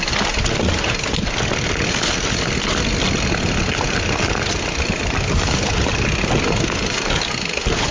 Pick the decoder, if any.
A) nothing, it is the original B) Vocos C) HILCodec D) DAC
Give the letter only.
A